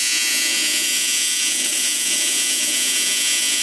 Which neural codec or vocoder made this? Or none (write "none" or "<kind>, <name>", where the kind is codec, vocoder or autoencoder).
vocoder, Vocos